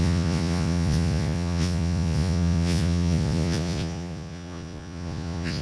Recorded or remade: remade